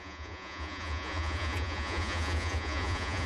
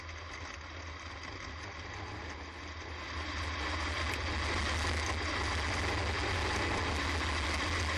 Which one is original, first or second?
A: second